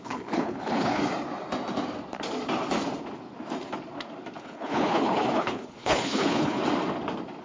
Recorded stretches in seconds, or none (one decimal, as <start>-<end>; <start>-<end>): 1.0-4.4; 6.6-7.4